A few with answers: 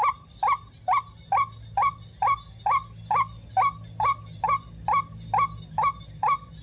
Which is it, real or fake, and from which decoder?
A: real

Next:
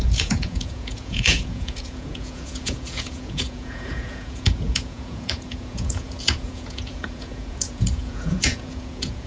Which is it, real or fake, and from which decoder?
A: fake, vocoder, Vocos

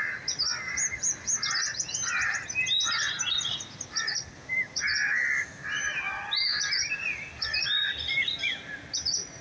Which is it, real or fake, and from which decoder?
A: real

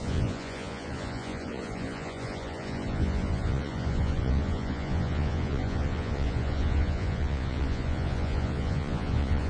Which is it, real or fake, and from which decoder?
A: fake, vocoder, Vocos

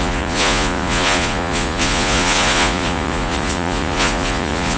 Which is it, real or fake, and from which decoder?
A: fake, vocoder, Vocos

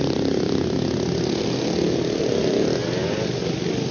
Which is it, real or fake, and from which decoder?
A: real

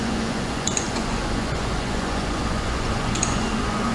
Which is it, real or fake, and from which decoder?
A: fake, vocoder, Vocos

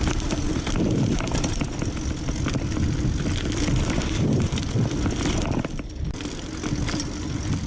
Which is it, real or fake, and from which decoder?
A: real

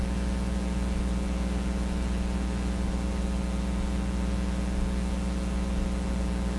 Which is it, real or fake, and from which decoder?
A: real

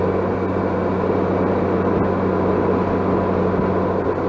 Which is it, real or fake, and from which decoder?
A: real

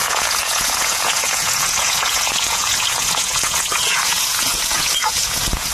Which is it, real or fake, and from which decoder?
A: fake, vocoder, Vocos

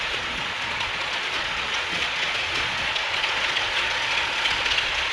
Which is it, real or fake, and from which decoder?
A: fake, vocoder, Vocos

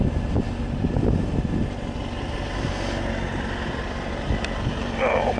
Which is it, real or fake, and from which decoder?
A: real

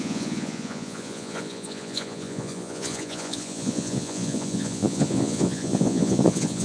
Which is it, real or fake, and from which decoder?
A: fake, vocoder, Vocos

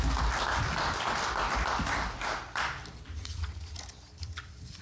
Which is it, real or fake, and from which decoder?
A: real